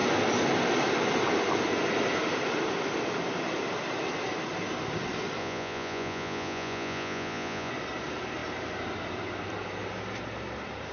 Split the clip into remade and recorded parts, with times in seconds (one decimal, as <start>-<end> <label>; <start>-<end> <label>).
0.0-5.4 recorded; 5.4-7.7 remade; 7.7-10.9 recorded

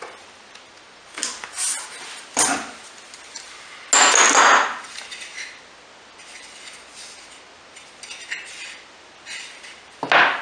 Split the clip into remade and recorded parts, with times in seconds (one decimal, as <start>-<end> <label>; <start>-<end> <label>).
0.0-10.4 recorded